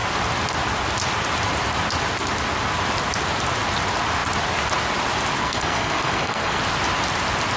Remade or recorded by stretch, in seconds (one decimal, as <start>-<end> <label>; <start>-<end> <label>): 0.0-5.4 recorded; 5.4-6.6 remade; 6.6-7.6 recorded